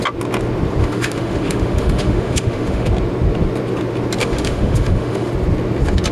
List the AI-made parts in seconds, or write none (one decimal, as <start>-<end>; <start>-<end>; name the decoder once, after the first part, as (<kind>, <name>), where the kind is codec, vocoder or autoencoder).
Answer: 0.8-2.9 (autoencoder, DAC-VAE); 4.2-5.3